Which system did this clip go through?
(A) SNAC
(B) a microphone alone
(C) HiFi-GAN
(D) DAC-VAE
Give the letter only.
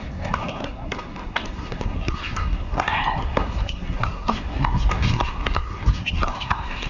A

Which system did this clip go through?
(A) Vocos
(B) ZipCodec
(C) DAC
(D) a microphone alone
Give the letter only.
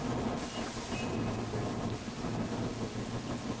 D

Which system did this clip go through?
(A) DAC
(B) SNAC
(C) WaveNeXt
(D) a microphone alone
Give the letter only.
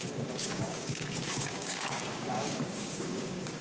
A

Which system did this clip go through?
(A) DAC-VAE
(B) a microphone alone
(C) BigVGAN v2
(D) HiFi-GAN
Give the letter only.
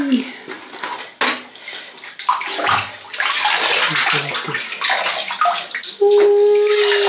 B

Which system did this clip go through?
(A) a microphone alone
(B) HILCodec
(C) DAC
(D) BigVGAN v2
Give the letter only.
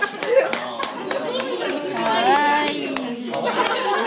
A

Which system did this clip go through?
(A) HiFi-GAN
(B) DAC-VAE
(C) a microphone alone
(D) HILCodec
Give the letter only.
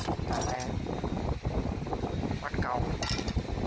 C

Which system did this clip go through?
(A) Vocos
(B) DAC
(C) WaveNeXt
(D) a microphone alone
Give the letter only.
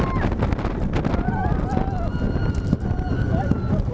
D